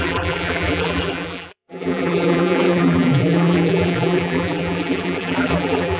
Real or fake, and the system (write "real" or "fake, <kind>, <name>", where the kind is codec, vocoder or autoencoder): fake, vocoder, BigVGAN v2